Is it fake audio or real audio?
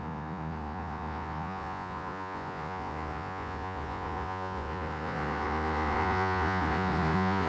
fake